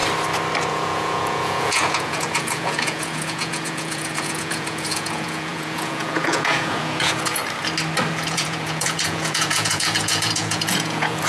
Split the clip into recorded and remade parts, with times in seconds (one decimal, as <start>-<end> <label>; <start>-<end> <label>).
0.0-0.7 recorded; 0.7-7.4 remade; 7.4-8.1 recorded; 8.1-11.3 remade